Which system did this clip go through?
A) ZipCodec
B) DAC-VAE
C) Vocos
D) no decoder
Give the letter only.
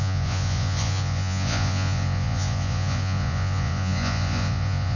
C